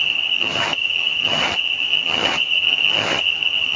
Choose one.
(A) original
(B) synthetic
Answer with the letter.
B